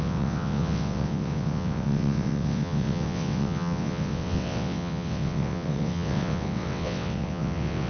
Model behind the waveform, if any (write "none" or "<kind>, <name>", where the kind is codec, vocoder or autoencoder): vocoder, WaveNeXt